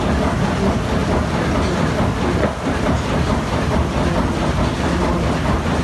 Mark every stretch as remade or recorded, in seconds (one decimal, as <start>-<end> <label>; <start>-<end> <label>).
0.0-5.8 recorded